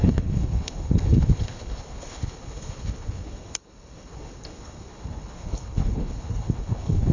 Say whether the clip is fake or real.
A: fake